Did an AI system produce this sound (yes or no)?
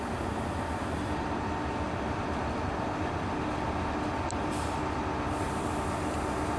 no